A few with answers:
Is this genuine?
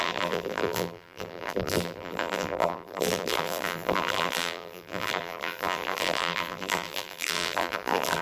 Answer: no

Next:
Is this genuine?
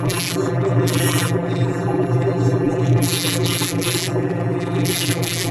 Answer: no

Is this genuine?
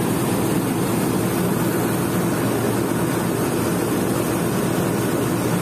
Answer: yes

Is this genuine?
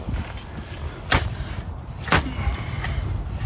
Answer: yes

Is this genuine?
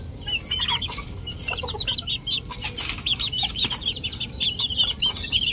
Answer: yes